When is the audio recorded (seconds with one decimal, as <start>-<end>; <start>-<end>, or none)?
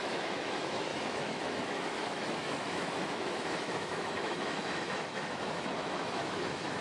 none